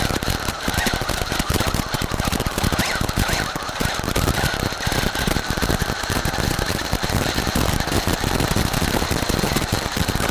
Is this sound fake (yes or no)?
yes